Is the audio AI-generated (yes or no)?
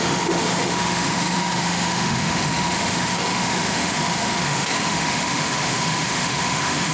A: yes